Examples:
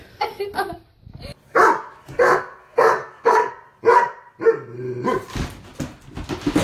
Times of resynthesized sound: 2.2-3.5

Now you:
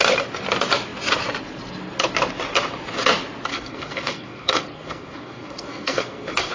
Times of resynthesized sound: 3.5-6.5

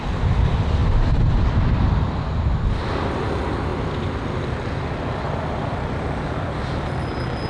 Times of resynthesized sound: none

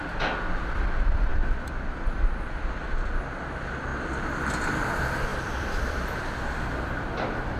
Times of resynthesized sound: 1.3-2.8; 5.3-6.3

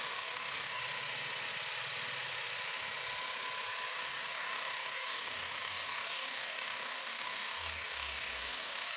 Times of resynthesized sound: 0.0-0.8; 3.9-9.0

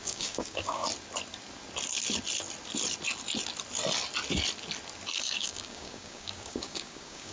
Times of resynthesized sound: 0.0-0.8; 5.2-7.3